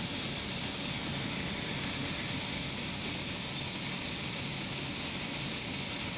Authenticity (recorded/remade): recorded